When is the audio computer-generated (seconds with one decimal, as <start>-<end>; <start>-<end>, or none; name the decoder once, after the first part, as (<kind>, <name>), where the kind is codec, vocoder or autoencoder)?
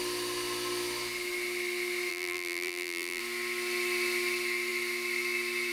2.1-3.2 (vocoder, BigVGAN v2)